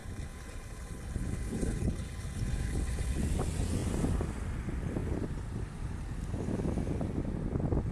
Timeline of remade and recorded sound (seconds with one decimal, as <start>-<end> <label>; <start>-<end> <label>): 0.0-3.2 remade; 3.2-7.9 recorded